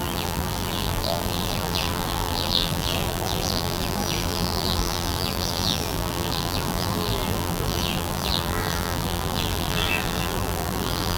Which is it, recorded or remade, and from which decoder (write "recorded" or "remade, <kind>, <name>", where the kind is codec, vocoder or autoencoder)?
remade, vocoder, BigVGAN v2